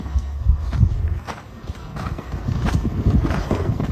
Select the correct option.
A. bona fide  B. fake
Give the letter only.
B